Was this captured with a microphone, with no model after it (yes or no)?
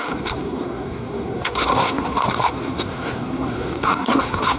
no